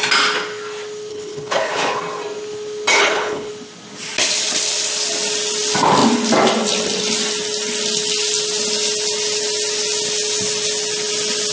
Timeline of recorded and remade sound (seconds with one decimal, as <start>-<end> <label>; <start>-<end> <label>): 0.0-1.1 recorded; 1.1-2.0 remade; 2.0-2.9 recorded; 2.9-3.5 remade; 3.5-11.5 recorded